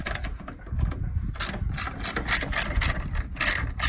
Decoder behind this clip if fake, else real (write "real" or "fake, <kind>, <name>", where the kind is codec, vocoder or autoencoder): real